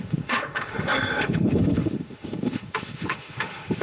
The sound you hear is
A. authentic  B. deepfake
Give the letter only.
B